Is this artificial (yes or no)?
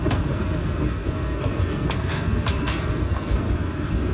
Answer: yes